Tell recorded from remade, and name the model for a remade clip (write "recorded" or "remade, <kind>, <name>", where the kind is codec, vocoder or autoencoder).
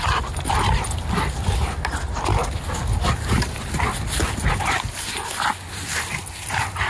recorded